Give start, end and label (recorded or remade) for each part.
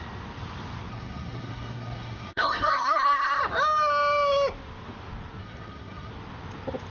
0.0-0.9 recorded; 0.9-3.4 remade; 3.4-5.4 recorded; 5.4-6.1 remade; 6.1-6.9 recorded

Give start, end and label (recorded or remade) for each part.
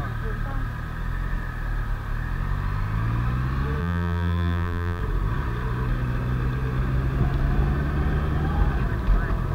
0.0-3.8 recorded; 3.8-5.0 remade; 5.0-9.5 recorded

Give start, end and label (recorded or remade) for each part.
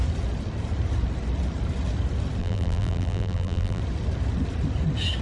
0.0-2.4 recorded; 2.4-3.8 remade; 3.8-5.2 recorded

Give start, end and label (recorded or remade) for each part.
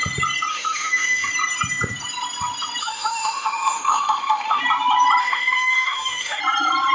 0.0-0.5 recorded; 0.5-1.3 remade; 1.3-2.8 recorded; 2.8-4.6 remade; 4.6-5.2 recorded; 5.2-6.4 remade; 6.4-6.9 recorded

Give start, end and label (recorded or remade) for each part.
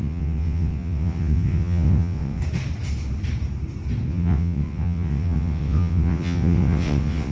0.0-2.4 remade; 2.4-4.1 recorded; 4.1-7.3 remade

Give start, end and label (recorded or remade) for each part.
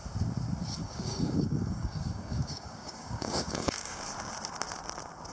0.0-0.8 recorded; 0.8-4.0 remade; 4.0-5.3 recorded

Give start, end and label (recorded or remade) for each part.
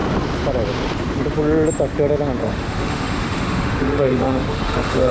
0.0-2.4 recorded; 2.4-5.1 remade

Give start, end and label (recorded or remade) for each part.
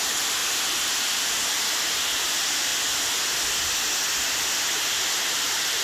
0.0-0.4 remade; 0.4-1.0 recorded; 1.0-2.7 remade; 2.7-4.8 recorded; 4.8-5.8 remade